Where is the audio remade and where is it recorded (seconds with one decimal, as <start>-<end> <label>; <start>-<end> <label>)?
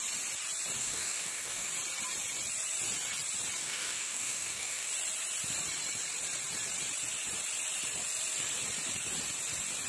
0.0-0.8 recorded; 0.8-1.7 remade; 1.7-3.6 recorded; 3.6-4.9 remade; 4.9-9.9 recorded